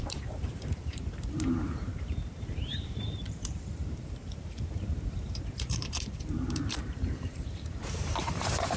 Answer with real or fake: fake